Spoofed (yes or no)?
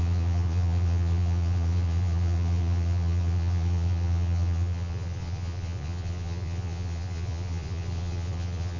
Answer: yes